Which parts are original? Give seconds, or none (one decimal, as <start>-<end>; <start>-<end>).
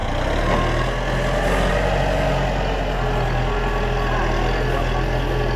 0.0-5.6